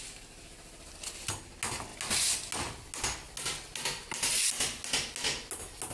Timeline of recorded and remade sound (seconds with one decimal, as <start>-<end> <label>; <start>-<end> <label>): 0.0-5.9 recorded